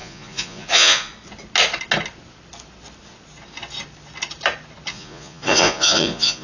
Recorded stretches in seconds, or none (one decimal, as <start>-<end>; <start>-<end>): 1.1-4.9